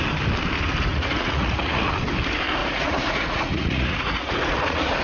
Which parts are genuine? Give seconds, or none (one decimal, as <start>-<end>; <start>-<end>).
0.0-0.9; 1.9-2.6